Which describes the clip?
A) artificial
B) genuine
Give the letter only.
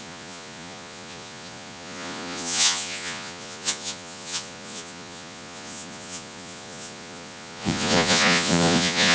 A